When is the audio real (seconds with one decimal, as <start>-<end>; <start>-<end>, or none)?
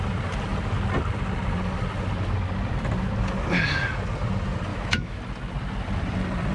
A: 0.0-4.7; 5.2-6.5